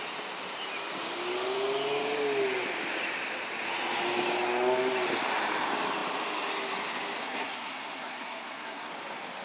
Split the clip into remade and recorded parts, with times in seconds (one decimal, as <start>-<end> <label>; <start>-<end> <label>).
0.0-7.2 recorded; 7.2-8.9 remade; 8.9-9.4 recorded